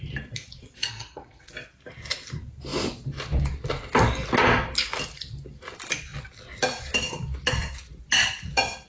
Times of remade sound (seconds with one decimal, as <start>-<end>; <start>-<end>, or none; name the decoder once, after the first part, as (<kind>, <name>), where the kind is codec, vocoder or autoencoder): 0.8-1.5 (codec, SNAC)